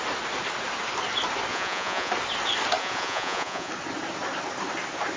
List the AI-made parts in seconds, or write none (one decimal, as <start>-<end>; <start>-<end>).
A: 1.5-2.1; 2.8-3.7